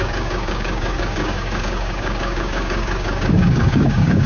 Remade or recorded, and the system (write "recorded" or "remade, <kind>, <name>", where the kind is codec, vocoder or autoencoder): remade, codec, DAC